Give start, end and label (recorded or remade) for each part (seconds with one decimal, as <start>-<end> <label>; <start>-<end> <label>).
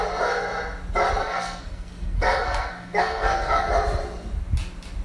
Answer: 0.0-1.2 recorded; 1.2-3.7 remade; 3.7-5.0 recorded